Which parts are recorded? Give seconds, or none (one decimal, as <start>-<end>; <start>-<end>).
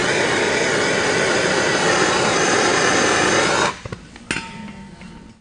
0.0-5.4